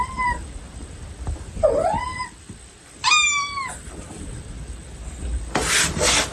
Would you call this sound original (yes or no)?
no